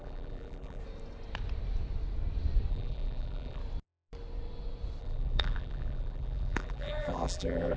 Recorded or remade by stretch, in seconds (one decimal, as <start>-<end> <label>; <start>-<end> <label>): 0.0-0.8 remade; 0.8-2.7 recorded; 2.7-3.6 remade; 3.6-5.0 recorded; 5.0-7.8 remade